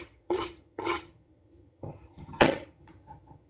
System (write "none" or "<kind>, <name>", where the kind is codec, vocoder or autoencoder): vocoder, HiFi-GAN